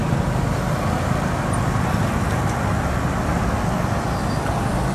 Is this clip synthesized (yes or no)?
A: no